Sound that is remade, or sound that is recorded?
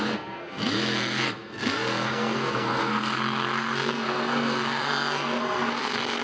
remade